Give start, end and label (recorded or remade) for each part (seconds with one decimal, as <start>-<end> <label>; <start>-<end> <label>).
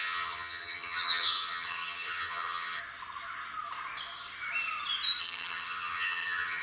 0.0-2.8 remade; 2.8-5.2 recorded; 5.2-6.6 remade